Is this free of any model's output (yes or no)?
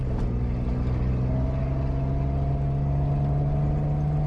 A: yes